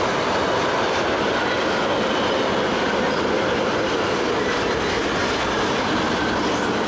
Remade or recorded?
recorded